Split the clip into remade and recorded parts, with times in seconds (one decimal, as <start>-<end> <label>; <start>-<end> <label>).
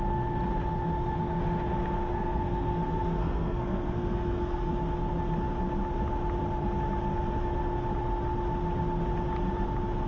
0.0-2.1 recorded; 2.1-4.7 remade; 4.7-10.1 recorded